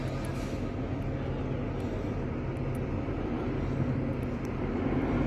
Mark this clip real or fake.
real